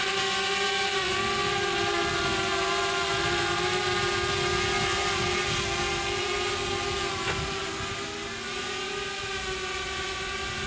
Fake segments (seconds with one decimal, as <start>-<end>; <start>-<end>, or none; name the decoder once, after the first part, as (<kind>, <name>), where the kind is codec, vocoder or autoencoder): none